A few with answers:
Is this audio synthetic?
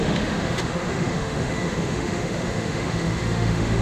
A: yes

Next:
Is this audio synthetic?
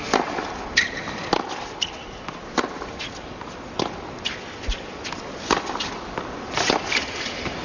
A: no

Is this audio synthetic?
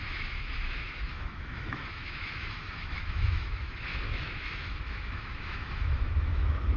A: yes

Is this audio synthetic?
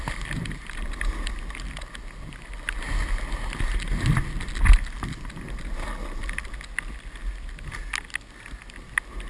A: no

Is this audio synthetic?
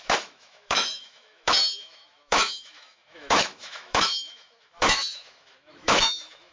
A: yes